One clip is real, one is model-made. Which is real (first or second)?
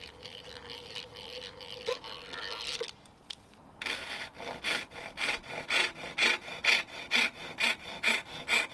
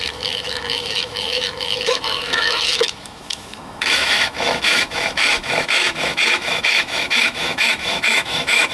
first